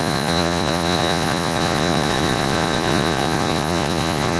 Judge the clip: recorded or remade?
remade